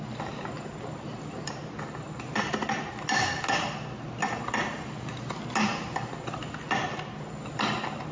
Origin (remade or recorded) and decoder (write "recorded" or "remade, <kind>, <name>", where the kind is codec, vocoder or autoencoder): recorded